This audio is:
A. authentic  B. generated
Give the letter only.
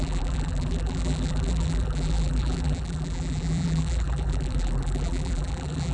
B